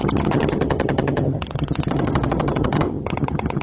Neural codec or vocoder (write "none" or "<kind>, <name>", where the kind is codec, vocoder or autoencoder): vocoder, HiFi-GAN